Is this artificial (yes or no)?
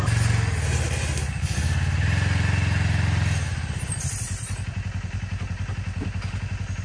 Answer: no